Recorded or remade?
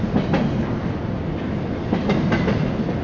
recorded